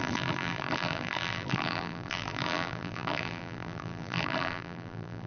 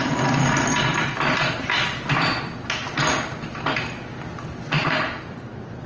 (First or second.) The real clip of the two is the second